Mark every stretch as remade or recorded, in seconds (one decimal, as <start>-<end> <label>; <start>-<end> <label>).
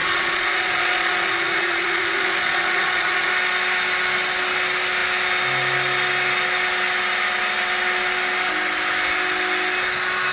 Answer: 0.0-3.3 remade; 3.3-10.3 recorded